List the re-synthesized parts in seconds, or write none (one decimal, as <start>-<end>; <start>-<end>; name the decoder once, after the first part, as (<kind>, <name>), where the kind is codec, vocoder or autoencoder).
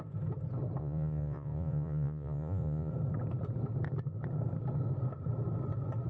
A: 0.8-2.9 (vocoder, Vocos)